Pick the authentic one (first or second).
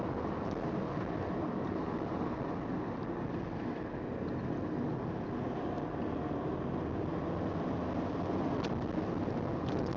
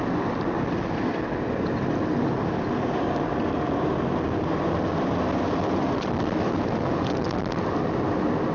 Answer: first